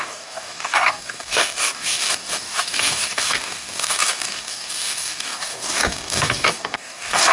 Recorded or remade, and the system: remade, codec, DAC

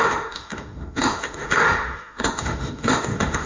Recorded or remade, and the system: remade, autoencoder, DAC-VAE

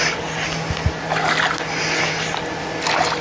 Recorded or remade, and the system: recorded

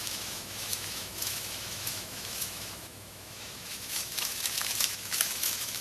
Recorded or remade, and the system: remade, autoencoder, DAC-VAE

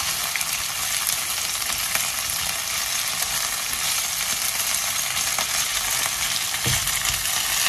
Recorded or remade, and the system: recorded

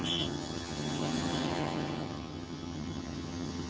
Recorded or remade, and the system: remade, vocoder, HiFi-GAN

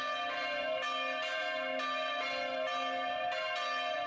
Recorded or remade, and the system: recorded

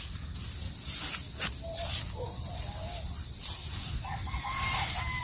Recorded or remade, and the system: recorded